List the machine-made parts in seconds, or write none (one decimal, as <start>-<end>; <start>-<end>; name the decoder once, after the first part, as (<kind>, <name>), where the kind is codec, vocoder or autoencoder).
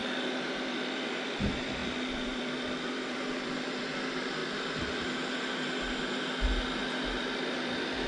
0.5-4.4 (vocoder, BigVGAN v2); 7.2-8.1